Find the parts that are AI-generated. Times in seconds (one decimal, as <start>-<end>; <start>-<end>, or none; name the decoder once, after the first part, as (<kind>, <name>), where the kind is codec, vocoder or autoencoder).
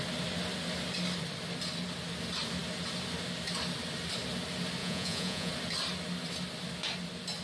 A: 4.8-5.5 (vocoder, Vocos)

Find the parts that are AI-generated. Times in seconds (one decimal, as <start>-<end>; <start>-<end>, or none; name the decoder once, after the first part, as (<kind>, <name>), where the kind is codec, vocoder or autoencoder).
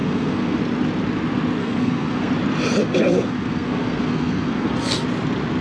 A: 0.0-0.6 (codec, SNAC); 1.6-2.3; 2.8-4.7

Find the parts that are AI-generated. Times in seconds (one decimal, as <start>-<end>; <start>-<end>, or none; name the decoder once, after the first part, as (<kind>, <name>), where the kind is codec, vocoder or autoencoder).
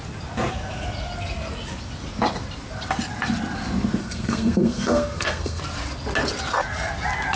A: 4.0-5.6 (codec, SNAC)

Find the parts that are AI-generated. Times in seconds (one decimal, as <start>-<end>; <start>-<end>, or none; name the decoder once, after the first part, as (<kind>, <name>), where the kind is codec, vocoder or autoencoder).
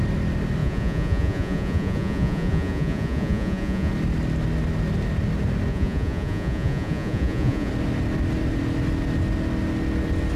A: 0.6-3.9 (vocoder, Vocos); 5.7-7.7